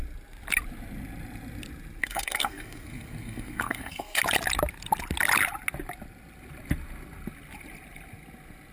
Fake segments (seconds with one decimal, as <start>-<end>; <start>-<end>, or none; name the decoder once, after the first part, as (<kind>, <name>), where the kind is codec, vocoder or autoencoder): 2.0-4.2 (codec, SNAC)